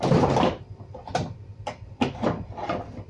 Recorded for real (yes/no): yes